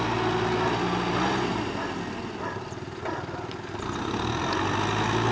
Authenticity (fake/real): real